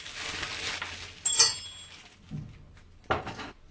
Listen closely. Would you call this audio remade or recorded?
recorded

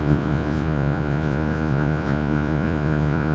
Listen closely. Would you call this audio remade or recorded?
remade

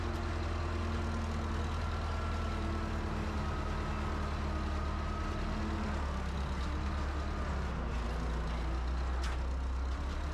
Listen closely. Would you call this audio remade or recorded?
recorded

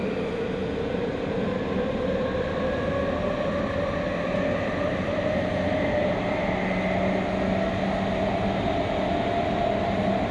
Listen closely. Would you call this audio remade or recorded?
recorded